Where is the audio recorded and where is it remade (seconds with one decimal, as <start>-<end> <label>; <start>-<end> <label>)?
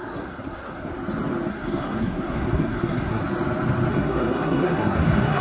0.0-0.9 remade; 0.9-1.5 recorded; 1.5-3.2 remade; 3.2-3.9 recorded; 3.9-5.4 remade